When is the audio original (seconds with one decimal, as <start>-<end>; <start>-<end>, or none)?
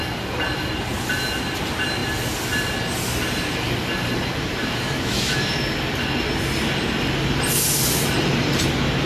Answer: 0.0-4.6; 5.4-9.1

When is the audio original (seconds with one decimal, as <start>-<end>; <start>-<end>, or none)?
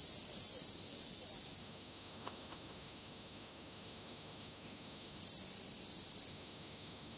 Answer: 0.0-1.6; 5.2-6.3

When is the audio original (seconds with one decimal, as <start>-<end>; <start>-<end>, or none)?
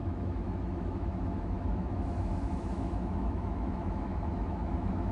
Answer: none